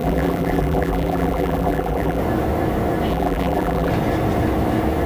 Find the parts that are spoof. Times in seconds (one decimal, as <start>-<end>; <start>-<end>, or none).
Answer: 0.0-2.2; 3.1-3.9